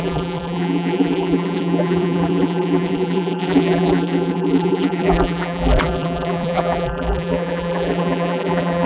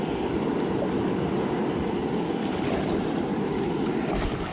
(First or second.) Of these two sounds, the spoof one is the first